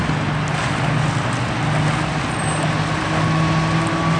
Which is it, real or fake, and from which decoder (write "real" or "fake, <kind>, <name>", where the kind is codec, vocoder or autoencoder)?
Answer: real